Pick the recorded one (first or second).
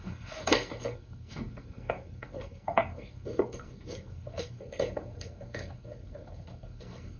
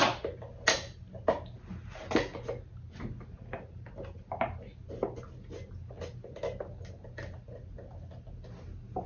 second